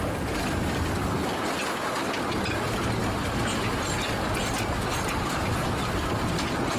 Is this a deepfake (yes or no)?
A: no